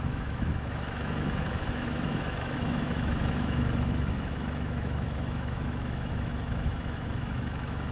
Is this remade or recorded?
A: remade